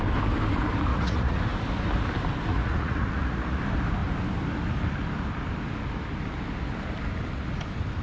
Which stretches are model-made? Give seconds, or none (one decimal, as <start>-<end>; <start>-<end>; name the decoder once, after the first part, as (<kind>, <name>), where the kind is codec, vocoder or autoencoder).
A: 0.9-1.4 (vocoder, Vocos); 2.5-3.6